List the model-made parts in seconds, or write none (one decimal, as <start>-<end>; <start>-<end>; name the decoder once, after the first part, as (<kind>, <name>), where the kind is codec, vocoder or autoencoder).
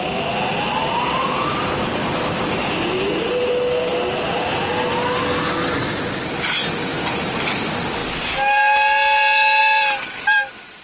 none